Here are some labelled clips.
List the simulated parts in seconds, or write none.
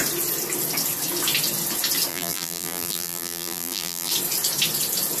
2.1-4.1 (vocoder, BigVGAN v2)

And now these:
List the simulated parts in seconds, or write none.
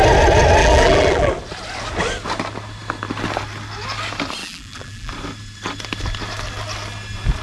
0.6-1.3 (vocoder, BigVGAN v2); 4.4-5.1